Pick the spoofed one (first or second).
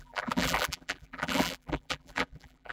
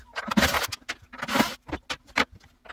first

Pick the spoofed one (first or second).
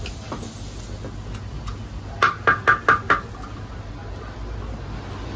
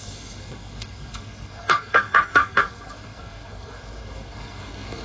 second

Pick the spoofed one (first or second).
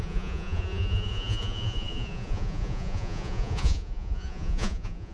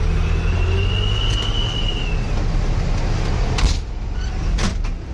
first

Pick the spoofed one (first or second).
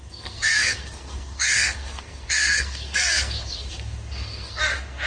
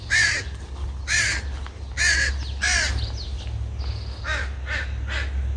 first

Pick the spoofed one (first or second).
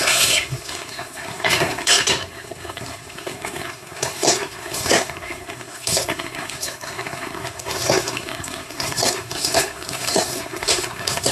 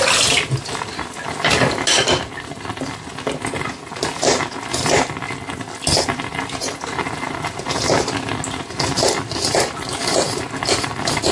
first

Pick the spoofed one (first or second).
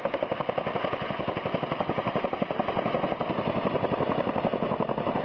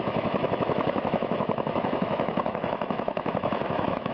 second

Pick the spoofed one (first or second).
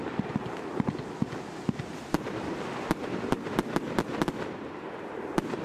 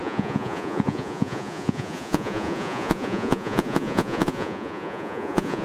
second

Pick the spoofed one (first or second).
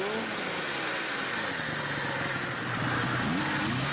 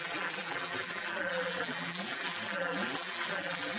second